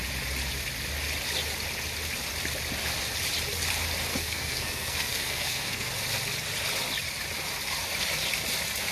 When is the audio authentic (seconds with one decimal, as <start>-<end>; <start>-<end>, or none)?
0.0-4.1; 5.9-8.9